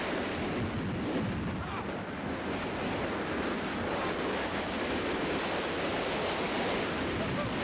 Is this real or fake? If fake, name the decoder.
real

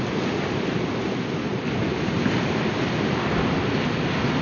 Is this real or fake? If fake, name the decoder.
real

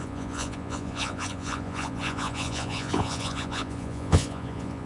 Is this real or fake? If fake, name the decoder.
fake, vocoder, Vocos